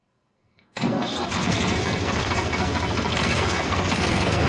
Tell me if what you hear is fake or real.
fake